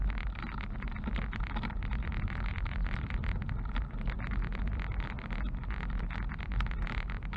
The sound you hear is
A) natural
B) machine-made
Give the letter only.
A